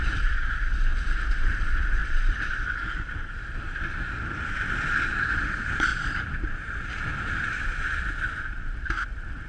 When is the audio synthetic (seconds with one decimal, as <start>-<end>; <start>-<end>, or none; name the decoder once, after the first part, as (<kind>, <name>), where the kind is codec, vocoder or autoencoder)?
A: none